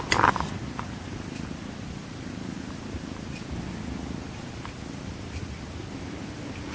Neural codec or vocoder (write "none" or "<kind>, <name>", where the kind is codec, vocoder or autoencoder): none